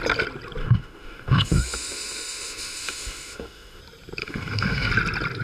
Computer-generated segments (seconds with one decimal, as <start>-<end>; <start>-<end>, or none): 0.6-3.8; 4.2-4.9